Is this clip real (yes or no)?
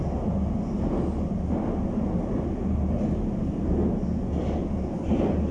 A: yes